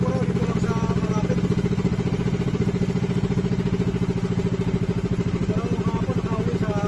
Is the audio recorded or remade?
recorded